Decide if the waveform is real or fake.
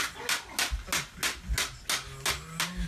real